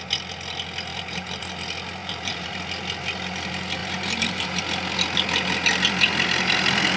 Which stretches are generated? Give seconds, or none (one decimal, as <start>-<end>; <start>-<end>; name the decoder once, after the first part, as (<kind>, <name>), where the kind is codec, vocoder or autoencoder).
0.9-1.4 (vocoder, BigVGAN v2); 2.0-2.6; 3.8-4.6